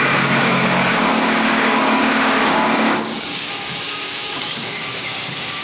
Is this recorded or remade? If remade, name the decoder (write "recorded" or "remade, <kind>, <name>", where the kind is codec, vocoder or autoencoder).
remade, codec, DAC